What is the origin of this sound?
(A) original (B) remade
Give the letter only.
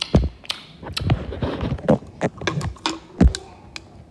A